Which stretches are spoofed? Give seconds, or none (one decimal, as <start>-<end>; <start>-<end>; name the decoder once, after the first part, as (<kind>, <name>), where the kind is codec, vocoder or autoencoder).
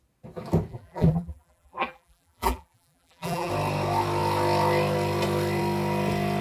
0.7-3.5 (vocoder, BigVGAN v2)